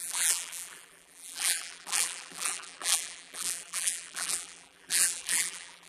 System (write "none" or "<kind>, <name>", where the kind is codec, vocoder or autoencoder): vocoder, BigVGAN v2